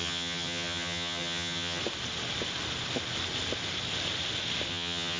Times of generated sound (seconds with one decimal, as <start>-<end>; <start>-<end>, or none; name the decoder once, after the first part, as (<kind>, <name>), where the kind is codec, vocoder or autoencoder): 0.0-1.8 (vocoder, HiFi-GAN); 4.7-5.2